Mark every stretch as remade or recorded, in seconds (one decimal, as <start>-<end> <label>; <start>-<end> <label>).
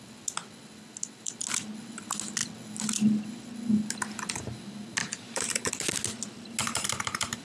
0.0-5.0 recorded; 5.0-5.7 remade; 5.7-6.6 recorded; 6.6-7.4 remade